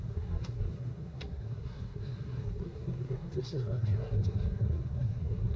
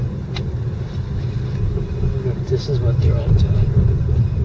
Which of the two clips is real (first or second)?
second